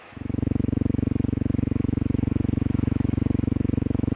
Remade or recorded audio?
remade